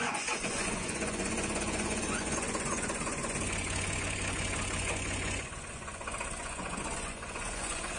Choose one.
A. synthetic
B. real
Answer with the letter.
A